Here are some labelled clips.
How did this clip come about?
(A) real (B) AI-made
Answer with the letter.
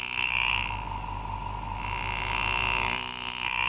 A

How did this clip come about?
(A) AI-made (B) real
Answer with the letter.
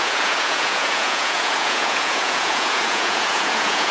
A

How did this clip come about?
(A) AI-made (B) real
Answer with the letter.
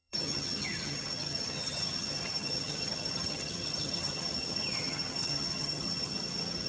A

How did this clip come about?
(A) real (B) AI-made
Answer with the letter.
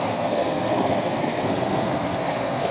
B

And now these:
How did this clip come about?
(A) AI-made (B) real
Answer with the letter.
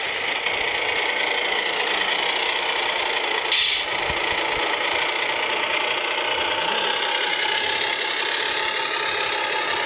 B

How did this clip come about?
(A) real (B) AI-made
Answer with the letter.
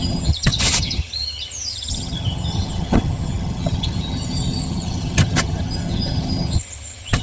B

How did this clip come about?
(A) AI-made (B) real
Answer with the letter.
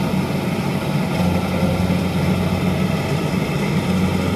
B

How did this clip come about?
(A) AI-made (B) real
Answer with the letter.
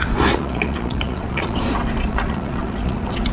A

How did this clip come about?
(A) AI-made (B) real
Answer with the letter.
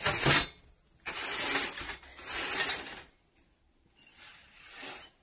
B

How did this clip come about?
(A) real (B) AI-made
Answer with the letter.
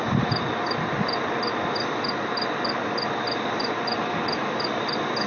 A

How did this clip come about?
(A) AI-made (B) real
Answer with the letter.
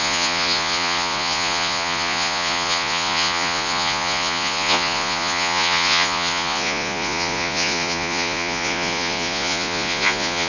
A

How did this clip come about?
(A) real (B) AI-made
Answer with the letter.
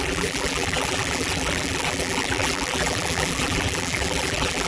B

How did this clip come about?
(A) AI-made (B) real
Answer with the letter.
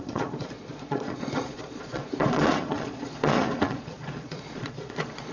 A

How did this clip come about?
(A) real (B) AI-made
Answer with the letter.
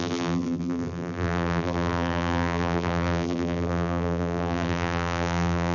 B